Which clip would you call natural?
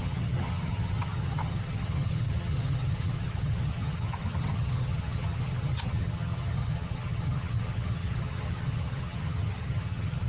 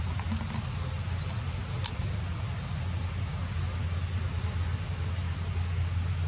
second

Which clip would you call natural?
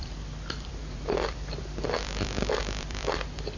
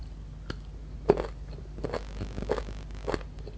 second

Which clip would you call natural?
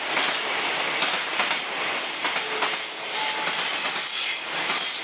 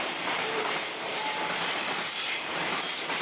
first